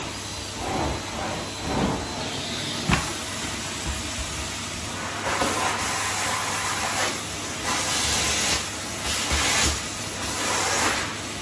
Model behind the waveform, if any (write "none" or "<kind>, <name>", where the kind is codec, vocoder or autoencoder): none